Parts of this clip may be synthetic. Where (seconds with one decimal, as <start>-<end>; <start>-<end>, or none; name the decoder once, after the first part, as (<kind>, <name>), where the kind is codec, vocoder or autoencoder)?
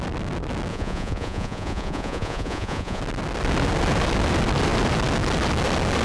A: 0.7-3.0 (vocoder, Vocos)